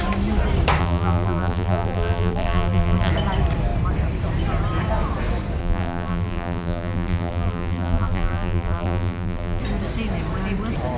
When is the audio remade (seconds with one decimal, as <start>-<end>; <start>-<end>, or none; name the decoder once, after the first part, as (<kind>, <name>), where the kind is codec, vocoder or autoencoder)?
0.8-3.1 (vocoder, BigVGAN v2); 5.6-9.6